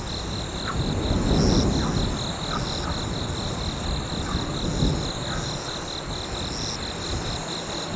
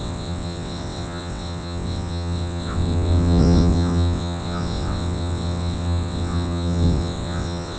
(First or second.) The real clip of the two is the first